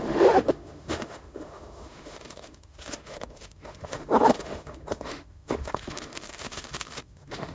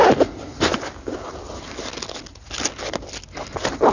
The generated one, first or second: first